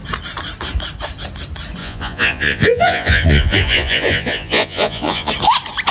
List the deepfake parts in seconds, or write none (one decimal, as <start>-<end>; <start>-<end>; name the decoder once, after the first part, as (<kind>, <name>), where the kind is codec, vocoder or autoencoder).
1.8-5.3 (vocoder, Vocos)